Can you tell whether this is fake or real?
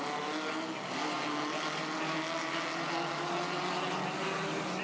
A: real